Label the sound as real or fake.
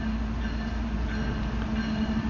real